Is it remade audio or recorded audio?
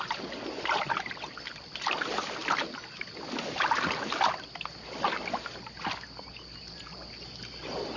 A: recorded